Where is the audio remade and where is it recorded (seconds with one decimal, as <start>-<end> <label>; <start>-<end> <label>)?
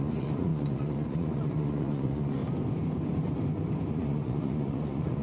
0.0-2.4 remade; 2.4-3.9 recorded; 3.9-5.2 remade